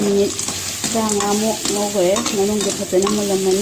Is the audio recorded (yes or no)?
yes